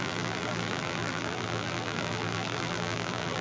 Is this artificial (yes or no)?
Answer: yes